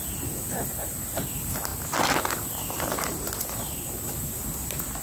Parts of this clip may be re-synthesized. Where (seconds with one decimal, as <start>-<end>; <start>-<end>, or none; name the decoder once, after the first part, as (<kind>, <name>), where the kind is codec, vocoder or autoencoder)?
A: none

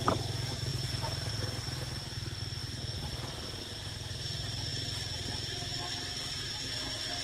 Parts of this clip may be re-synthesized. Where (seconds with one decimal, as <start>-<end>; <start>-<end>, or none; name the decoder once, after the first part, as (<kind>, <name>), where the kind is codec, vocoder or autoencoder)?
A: 0.7-1.3 (vocoder, BigVGAN v2); 2.6-3.6

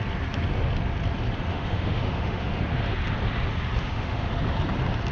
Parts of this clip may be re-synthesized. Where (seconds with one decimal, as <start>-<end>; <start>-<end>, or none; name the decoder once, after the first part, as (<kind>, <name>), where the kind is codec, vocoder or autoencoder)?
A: 1.5-2.6 (autoencoder, DAC-VAE); 3.8-4.3